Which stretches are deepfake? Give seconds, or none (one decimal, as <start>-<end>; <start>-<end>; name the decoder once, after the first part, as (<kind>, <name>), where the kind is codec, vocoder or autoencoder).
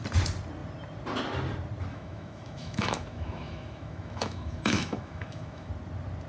1.9-5.7 (autoencoder, DAC-VAE)